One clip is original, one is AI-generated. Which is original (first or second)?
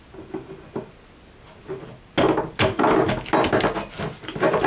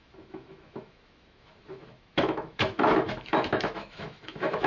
first